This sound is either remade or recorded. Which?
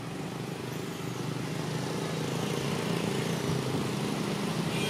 recorded